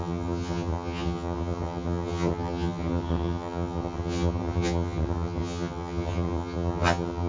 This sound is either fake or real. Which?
fake